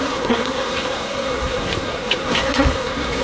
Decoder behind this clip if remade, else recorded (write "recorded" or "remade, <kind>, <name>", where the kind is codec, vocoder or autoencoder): remade, codec, SNAC